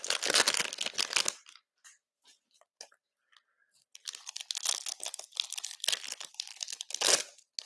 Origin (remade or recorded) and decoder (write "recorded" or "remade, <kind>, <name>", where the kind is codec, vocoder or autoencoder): recorded